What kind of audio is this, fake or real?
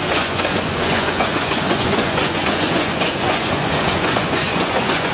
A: fake